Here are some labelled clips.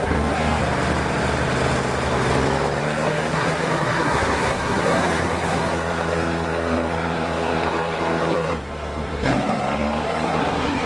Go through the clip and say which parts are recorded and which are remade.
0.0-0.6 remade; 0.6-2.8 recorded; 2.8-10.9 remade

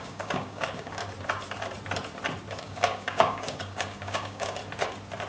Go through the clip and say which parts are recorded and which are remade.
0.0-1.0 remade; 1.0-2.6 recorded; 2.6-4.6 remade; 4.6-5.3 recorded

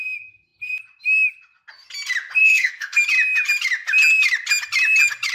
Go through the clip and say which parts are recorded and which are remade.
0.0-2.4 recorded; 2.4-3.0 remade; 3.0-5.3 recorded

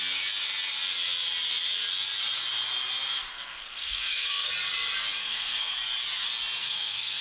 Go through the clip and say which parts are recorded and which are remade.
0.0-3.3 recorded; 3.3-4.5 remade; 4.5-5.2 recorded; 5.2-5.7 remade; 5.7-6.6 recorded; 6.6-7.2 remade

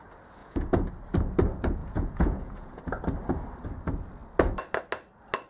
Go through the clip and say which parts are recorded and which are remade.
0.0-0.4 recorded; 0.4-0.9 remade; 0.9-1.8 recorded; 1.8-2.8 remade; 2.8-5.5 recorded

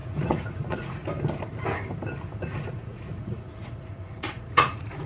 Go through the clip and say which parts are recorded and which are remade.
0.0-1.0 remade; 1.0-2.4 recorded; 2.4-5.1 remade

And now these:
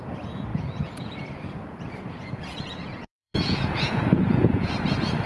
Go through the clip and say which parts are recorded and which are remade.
0.0-0.5 recorded; 0.5-1.2 remade; 1.2-2.2 recorded; 2.2-4.7 remade; 4.7-5.3 recorded